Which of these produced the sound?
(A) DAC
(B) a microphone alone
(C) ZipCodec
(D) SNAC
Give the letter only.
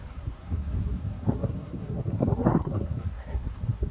D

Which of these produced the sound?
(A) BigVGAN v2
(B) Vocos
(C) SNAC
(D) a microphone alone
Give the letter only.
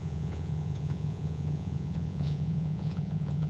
B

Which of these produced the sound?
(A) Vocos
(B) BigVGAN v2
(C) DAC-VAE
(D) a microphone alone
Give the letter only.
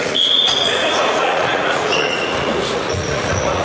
A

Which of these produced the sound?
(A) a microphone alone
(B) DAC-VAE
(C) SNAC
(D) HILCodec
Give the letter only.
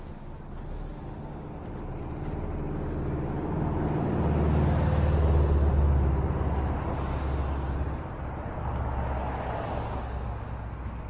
A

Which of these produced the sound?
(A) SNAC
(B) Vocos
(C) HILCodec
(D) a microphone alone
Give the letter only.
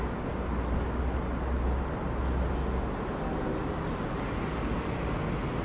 D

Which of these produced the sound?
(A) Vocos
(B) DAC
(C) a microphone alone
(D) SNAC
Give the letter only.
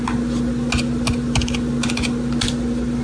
C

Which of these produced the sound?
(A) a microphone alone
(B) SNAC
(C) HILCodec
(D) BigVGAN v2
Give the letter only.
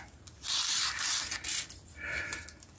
A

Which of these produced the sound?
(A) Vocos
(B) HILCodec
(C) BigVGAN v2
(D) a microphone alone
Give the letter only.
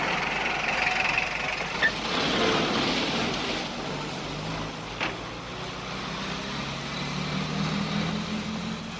D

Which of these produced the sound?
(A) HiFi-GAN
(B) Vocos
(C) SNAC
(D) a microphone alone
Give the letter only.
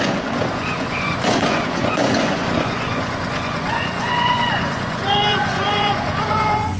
B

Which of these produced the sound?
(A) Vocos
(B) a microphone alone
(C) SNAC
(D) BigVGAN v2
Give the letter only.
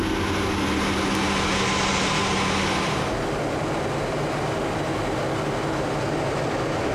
B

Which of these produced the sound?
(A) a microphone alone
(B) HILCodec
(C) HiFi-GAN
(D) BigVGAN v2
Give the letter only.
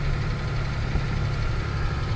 A